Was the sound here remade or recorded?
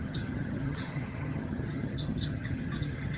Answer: remade